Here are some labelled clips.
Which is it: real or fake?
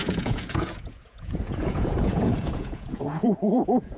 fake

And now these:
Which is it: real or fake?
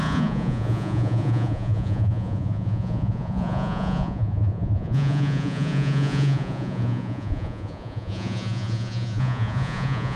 fake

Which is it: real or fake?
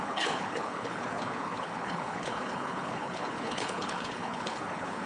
fake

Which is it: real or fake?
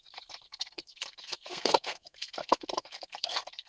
fake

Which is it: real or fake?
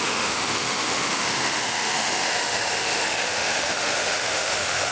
fake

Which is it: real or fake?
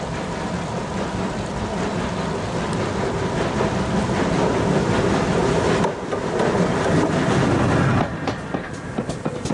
real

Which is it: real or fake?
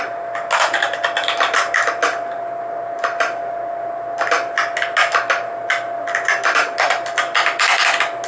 real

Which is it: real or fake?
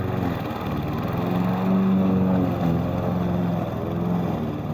real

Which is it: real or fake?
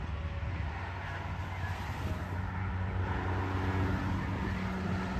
real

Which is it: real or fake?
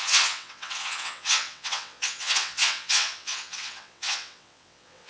fake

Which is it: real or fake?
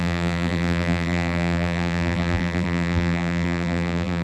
fake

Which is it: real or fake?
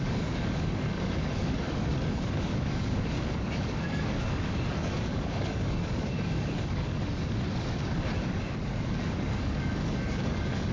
fake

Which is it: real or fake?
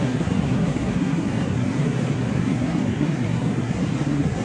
fake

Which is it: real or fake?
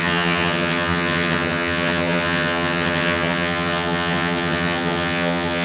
fake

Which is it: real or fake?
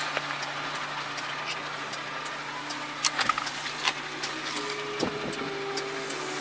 real